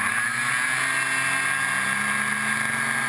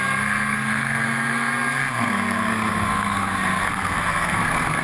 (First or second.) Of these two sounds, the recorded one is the first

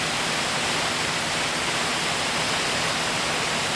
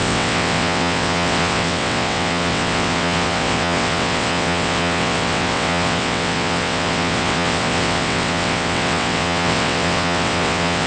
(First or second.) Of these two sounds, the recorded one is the first